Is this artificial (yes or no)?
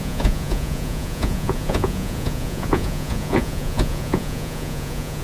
yes